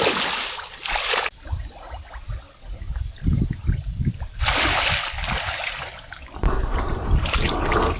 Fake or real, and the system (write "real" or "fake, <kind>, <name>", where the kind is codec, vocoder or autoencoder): real